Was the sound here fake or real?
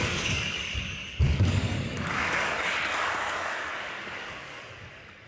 fake